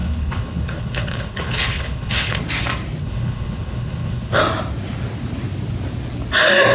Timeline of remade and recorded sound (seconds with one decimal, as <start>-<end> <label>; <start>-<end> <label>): 0.0-2.4 remade; 2.4-3.0 recorded; 3.0-4.4 remade; 4.4-6.7 recorded